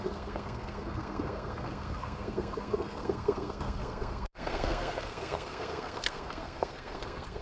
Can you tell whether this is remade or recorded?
remade